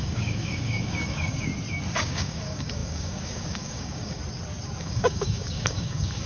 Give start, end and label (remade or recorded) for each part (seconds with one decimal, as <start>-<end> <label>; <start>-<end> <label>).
0.0-1.5 remade; 1.5-2.0 recorded; 2.0-4.2 remade; 4.2-4.8 recorded; 4.8-6.3 remade